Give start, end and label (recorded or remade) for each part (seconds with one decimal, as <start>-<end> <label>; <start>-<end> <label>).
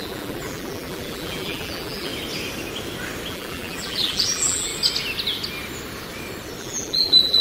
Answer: 0.0-2.1 remade; 2.1-3.3 recorded; 3.3-4.7 remade; 4.7-6.6 recorded; 6.6-7.4 remade